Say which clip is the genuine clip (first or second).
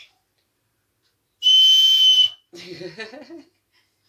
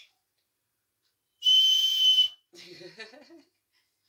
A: first